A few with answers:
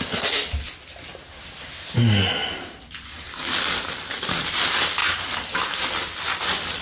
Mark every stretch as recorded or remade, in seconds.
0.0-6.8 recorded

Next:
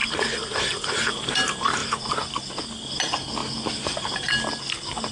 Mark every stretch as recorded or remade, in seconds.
0.0-1.8 recorded; 1.8-2.5 remade; 2.5-3.4 recorded; 3.4-4.6 remade; 4.6-5.1 recorded

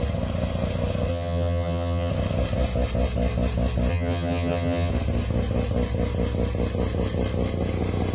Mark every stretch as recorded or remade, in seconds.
0.0-1.1 recorded; 1.1-2.1 remade; 2.1-3.9 recorded; 3.9-4.9 remade; 4.9-8.1 recorded

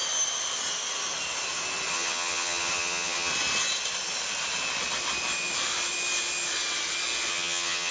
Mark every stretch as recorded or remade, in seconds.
0.0-1.9 recorded; 1.9-3.3 remade; 3.3-7.3 recorded; 7.3-7.9 remade